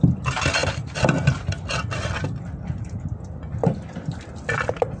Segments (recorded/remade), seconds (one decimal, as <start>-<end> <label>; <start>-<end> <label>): 0.0-5.0 recorded